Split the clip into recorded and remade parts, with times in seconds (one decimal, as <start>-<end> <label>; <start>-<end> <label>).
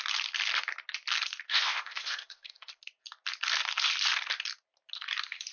0.0-1.5 recorded; 1.5-2.8 remade; 2.8-5.5 recorded